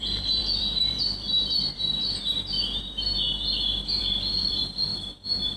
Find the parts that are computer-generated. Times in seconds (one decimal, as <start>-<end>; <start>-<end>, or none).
0.0-3.3; 4.0-4.9